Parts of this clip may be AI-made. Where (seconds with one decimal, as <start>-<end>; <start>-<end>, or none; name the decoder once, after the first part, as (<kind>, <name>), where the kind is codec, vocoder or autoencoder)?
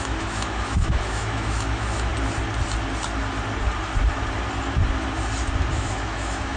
0.0-2.1 (autoencoder, DAC-VAE); 5.7-6.6